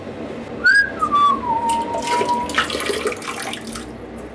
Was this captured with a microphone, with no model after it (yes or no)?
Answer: yes